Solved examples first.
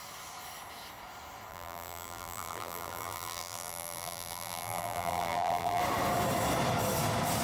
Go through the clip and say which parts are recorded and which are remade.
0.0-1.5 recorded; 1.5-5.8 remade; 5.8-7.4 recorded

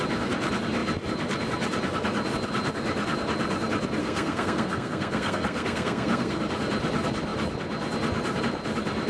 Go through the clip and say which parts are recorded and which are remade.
0.0-4.0 recorded; 4.0-6.4 remade; 6.4-9.1 recorded

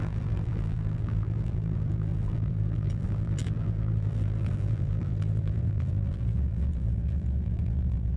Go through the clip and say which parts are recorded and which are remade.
0.0-8.2 remade

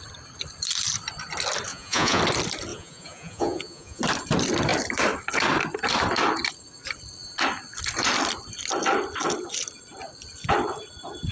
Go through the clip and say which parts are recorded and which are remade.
0.0-1.7 recorded; 1.7-2.2 remade; 2.2-2.7 recorded; 2.7-4.0 remade; 4.0-11.3 recorded

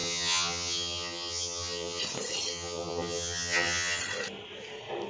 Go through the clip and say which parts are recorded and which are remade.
0.0-2.0 remade; 2.0-2.5 recorded; 2.5-4.0 remade; 4.0-5.1 recorded

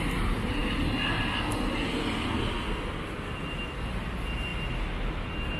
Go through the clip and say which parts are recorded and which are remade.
0.0-5.6 recorded

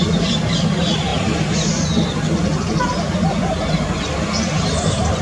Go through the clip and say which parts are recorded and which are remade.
0.0-5.2 recorded

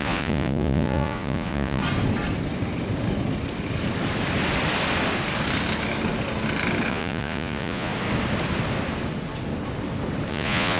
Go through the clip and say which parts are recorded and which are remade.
0.0-1.8 remade; 1.8-6.9 recorded; 6.9-7.9 remade; 7.9-10.3 recorded; 10.3-10.8 remade